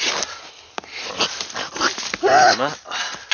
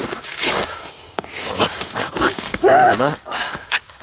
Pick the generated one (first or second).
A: second